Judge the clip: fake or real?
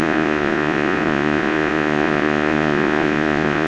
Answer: fake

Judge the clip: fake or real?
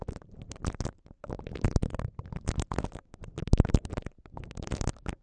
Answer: fake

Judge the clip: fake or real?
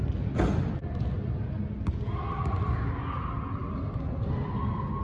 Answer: real